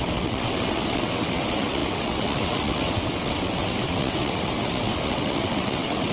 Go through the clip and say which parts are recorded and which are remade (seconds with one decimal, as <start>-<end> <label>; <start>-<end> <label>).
0.0-6.1 remade